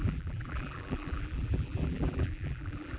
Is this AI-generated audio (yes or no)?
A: yes